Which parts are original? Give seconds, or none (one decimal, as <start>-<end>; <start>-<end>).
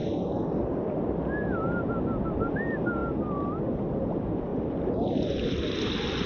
0.0-6.3